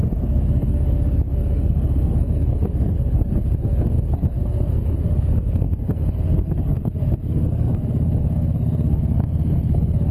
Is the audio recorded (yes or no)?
no